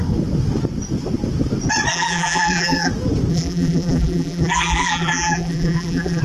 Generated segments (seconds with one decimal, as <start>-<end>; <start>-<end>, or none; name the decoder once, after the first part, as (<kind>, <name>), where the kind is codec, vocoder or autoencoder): 1.9-2.9 (vocoder, BigVGAN v2); 3.3-6.2